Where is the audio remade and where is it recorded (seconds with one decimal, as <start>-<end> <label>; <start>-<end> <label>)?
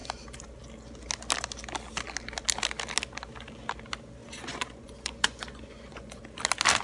0.0-4.2 recorded; 4.2-6.2 remade; 6.2-6.8 recorded